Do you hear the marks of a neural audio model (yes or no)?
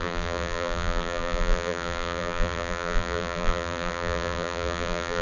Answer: yes